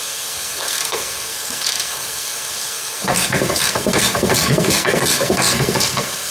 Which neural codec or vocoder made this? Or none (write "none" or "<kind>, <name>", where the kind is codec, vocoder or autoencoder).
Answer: codec, SNAC